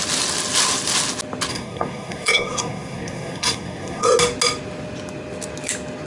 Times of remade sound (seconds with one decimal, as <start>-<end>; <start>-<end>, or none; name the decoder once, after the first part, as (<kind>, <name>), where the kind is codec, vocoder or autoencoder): 1.5-4.2 (codec, SNAC)